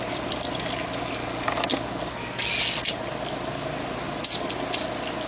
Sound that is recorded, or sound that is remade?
recorded